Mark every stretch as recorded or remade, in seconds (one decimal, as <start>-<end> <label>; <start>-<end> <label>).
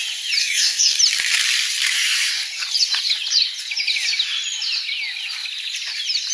0.0-0.4 recorded; 0.4-1.0 remade; 1.0-6.3 recorded